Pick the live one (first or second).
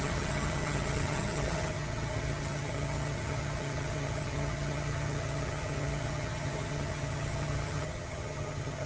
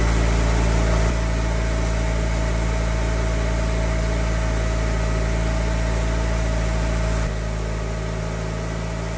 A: second